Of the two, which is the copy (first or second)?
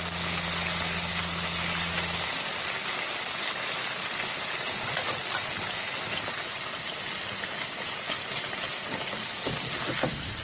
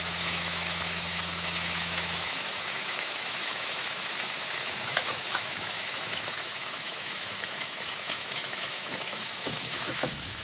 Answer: second